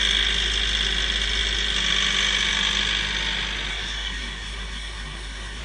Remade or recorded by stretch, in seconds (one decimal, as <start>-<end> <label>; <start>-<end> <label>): 0.0-3.7 recorded; 3.7-5.6 remade